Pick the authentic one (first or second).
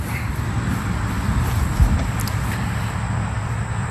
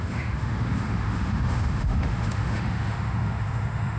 first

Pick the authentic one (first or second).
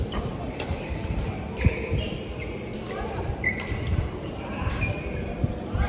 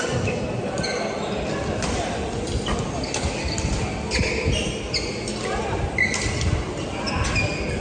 second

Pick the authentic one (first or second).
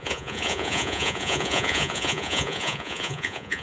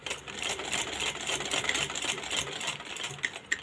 second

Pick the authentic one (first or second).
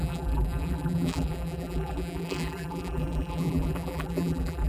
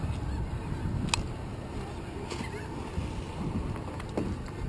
second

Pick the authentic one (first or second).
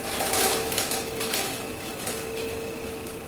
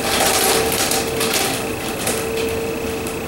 second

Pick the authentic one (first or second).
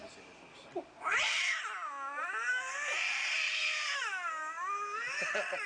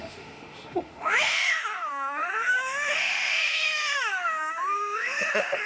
first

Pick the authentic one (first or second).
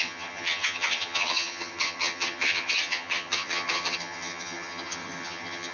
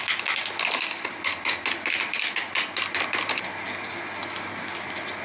second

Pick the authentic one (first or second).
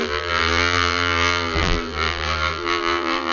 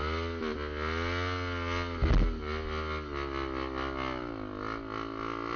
second